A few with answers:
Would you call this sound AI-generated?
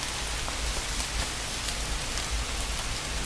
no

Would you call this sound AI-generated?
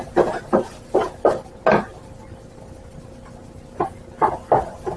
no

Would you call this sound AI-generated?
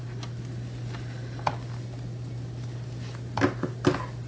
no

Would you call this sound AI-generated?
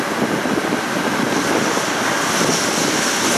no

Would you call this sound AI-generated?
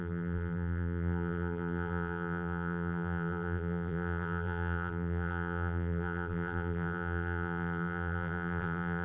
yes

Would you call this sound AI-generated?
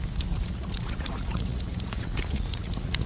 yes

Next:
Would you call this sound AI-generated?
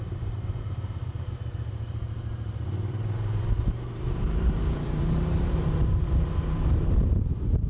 yes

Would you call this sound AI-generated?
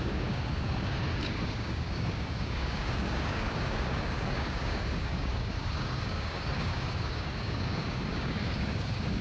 yes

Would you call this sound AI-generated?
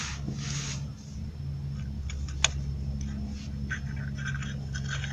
no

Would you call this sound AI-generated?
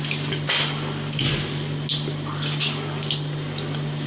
no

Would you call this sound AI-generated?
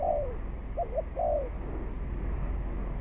no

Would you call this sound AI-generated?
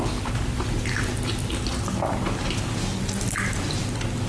no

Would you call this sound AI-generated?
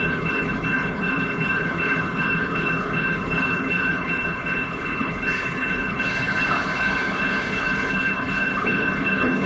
yes